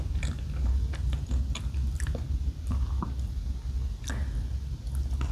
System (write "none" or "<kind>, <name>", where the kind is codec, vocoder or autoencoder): none